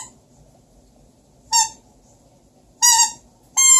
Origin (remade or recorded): recorded